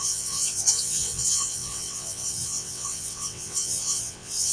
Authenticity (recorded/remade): remade